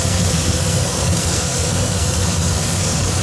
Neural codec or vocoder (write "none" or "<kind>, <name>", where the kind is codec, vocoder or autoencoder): codec, SNAC